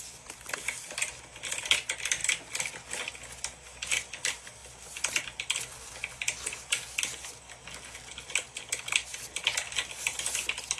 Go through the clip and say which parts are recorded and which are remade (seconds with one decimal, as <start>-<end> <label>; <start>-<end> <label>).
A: 0.0-10.8 recorded